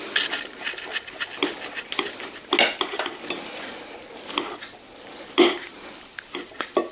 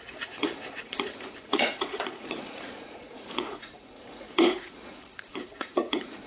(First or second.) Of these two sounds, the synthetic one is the second